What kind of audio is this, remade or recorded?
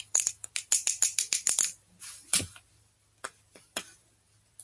recorded